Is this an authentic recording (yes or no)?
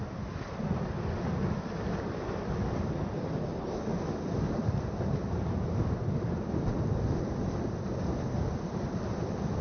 yes